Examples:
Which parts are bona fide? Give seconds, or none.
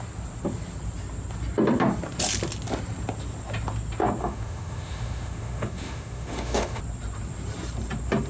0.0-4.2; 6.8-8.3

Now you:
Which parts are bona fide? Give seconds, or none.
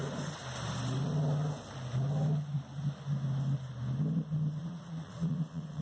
0.0-4.6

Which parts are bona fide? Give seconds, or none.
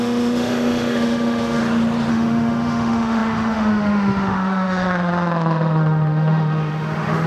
1.6-2.1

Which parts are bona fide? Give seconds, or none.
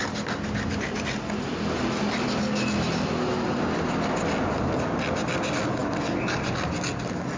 0.0-7.4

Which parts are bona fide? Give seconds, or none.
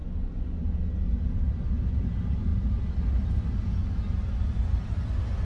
0.0-5.4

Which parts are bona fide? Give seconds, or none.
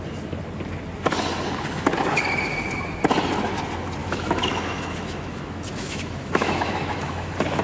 0.0-4.0